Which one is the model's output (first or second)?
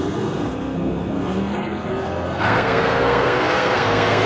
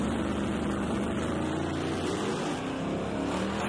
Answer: first